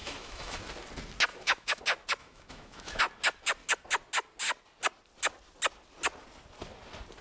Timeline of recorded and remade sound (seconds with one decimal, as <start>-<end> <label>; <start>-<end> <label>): 0.0-0.6 remade; 0.6-1.3 recorded; 1.3-1.8 remade; 1.8-2.2 recorded; 2.2-3.0 remade; 3.0-7.2 recorded